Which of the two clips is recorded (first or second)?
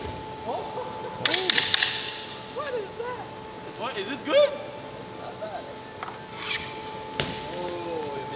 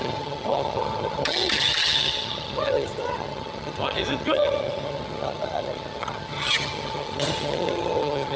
first